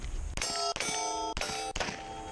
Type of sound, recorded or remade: recorded